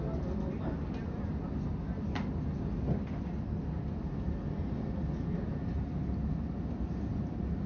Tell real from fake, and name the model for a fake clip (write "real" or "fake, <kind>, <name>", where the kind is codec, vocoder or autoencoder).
real